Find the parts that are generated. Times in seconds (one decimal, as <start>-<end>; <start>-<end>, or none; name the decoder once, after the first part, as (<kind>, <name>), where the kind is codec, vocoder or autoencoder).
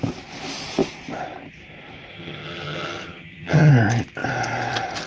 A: 2.1-3.7 (vocoder, HiFi-GAN)